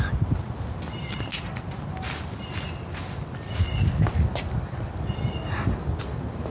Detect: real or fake real